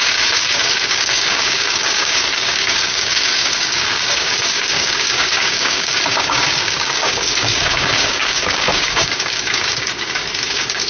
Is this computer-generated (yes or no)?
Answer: yes